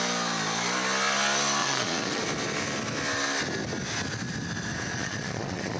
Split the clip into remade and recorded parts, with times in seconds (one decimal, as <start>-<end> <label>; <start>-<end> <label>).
0.0-1.6 recorded; 1.6-2.2 remade; 2.2-4.9 recorded; 4.9-5.8 remade